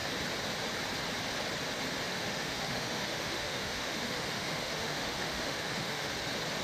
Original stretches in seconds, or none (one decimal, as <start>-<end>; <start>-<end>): 0.0-2.1; 6.1-6.6